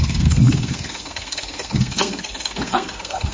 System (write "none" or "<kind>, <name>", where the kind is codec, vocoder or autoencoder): codec, SNAC